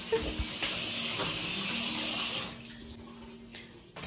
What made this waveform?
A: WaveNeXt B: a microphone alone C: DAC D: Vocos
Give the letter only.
B